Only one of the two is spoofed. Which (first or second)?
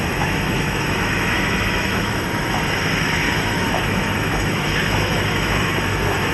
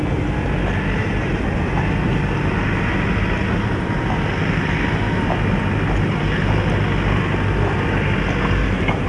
first